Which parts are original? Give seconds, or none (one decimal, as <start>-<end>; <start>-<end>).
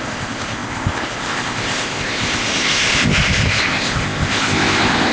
none